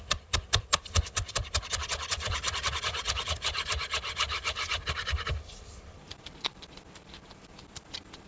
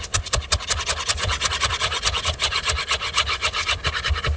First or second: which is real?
second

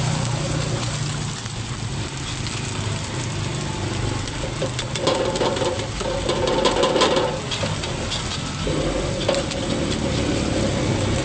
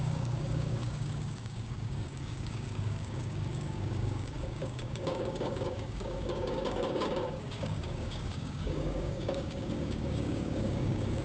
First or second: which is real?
first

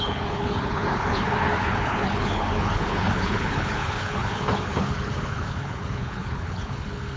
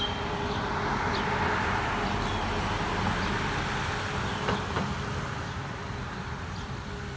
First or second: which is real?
second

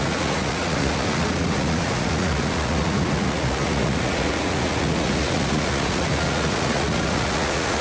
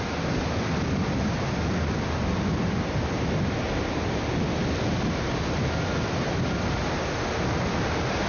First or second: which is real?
second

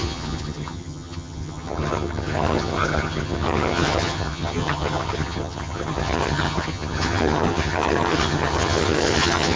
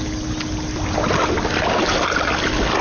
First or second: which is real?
second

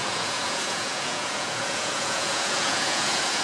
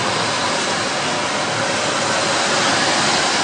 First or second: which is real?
second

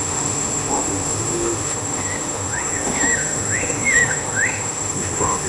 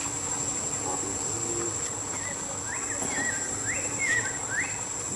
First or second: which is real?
second